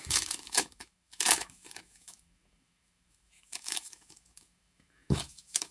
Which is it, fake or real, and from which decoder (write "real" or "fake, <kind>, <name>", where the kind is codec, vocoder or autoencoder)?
fake, autoencoder, DAC-VAE